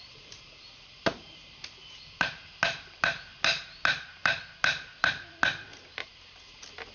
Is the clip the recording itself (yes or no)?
yes